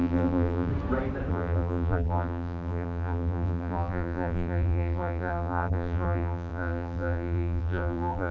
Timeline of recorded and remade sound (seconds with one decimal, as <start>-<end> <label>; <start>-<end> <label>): 0.0-0.7 remade; 0.7-1.3 recorded; 1.3-8.3 remade